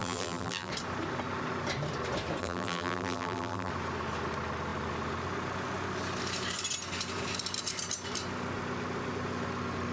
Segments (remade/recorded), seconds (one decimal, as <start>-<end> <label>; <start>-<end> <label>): 0.0-0.7 remade; 0.7-2.4 recorded; 2.4-3.7 remade; 3.7-9.9 recorded